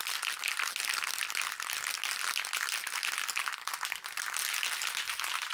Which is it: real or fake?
real